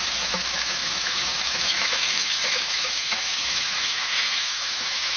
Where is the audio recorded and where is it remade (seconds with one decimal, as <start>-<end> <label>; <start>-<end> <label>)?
0.0-5.2 remade